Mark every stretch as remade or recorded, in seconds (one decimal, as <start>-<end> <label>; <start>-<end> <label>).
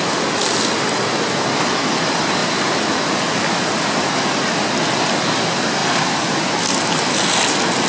0.0-7.9 recorded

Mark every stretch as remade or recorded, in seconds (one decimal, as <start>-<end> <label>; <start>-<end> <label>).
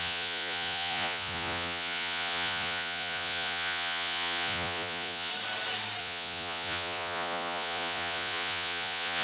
0.0-5.3 remade; 5.3-6.0 recorded; 6.0-9.2 remade